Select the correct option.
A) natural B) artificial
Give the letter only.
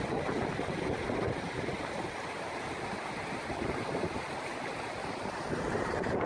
A